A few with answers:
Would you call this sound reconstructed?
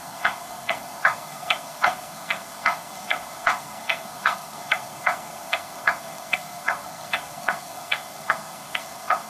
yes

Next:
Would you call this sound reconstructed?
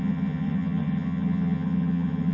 yes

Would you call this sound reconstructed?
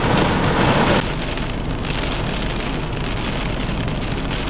no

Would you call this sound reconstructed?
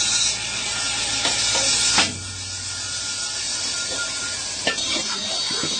no